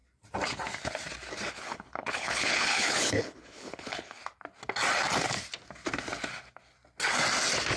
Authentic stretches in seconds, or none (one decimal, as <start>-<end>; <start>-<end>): 0.0-1.5; 4.2-7.8